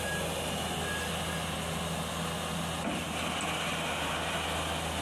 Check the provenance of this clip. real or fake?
real